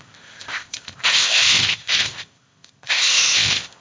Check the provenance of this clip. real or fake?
fake